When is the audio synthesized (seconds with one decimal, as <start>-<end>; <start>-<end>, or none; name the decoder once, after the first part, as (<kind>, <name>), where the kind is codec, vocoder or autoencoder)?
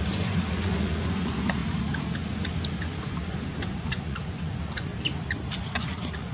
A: 0.0-1.6 (vocoder, Vocos); 2.8-4.9; 5.6-6.3